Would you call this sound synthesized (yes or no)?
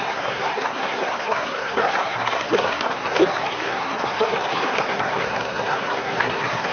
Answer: yes